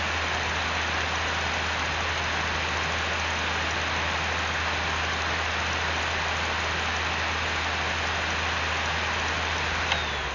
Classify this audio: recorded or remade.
recorded